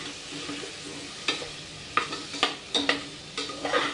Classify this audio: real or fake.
real